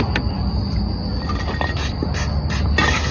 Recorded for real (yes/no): yes